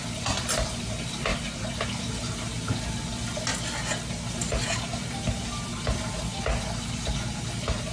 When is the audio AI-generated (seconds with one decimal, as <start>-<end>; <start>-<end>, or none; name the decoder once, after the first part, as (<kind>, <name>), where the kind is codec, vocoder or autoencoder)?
none